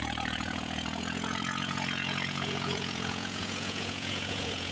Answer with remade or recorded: remade